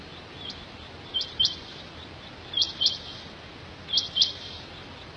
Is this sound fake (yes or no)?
no